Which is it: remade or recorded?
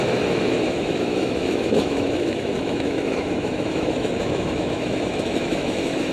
remade